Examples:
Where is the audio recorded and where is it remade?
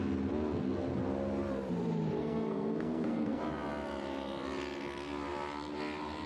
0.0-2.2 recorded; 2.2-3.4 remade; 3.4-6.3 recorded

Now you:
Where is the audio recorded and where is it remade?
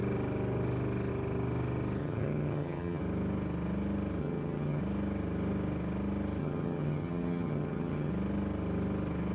0.0-2.0 recorded; 2.0-3.0 remade; 3.0-4.2 recorded; 4.2-4.8 remade; 4.8-6.4 recorded; 6.4-8.1 remade; 8.1-9.3 recorded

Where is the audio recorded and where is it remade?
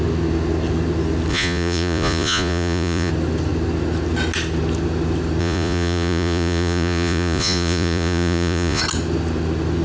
0.0-1.3 recorded; 1.3-3.1 remade; 3.1-5.4 recorded; 5.4-8.8 remade; 8.8-9.8 recorded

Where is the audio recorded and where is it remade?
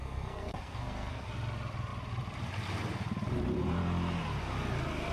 0.0-1.3 remade; 1.3-5.1 recorded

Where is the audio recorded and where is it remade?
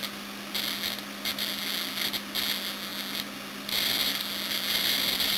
0.0-5.4 recorded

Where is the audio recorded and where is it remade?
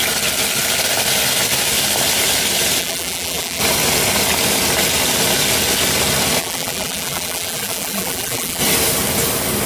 0.0-2.8 recorded; 2.8-3.6 remade; 3.6-6.4 recorded; 6.4-8.6 remade; 8.6-9.7 recorded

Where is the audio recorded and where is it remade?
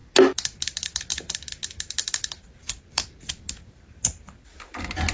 0.0-5.1 recorded